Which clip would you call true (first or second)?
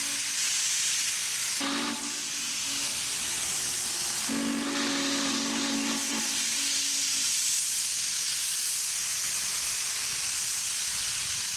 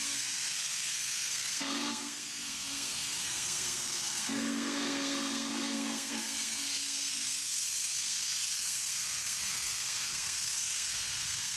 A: first